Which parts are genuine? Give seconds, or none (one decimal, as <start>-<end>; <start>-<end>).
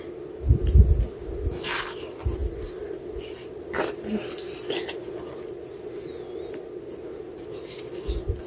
0.0-8.5